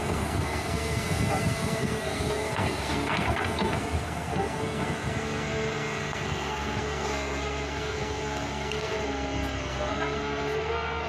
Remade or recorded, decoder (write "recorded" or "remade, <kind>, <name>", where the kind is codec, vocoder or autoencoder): remade, codec, SNAC